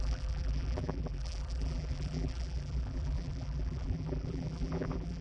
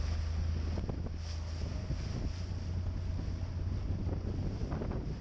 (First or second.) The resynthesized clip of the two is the first